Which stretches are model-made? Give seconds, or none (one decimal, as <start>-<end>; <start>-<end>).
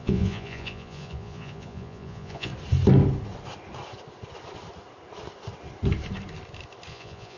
0.0-2.5; 6.9-7.4